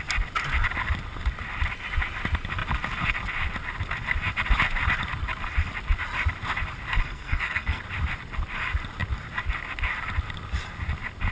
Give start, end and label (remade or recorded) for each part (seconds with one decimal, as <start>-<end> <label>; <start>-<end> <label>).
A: 0.0-7.0 recorded; 7.0-7.8 remade; 7.8-11.3 recorded